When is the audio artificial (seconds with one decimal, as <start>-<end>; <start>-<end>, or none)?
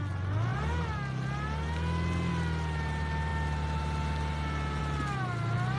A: none